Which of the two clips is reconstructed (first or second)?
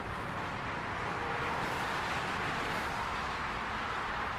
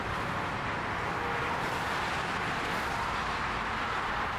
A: first